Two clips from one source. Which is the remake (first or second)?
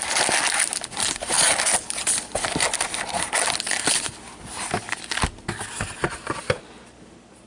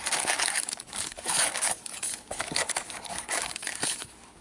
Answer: second